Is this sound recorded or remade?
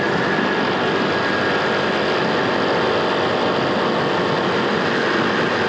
recorded